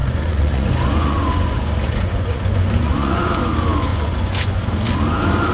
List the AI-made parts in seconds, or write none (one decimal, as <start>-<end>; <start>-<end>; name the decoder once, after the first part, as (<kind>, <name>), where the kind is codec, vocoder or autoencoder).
0.0-3.3 (vocoder, Vocos); 3.9-4.6